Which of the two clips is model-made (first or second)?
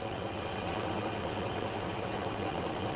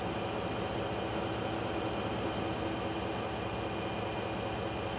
first